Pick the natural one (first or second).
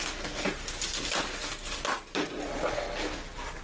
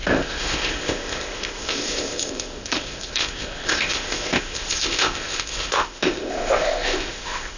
first